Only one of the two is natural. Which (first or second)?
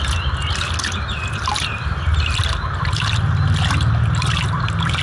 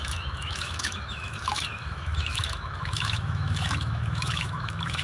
first